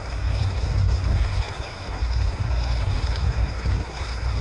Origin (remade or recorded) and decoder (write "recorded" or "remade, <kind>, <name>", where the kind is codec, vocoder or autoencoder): remade, codec, SNAC